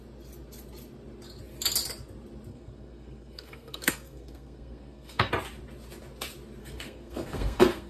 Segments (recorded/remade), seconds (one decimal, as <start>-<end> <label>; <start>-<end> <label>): 0.0-2.5 recorded; 2.5-5.3 remade; 5.3-6.6 recorded; 6.6-7.9 remade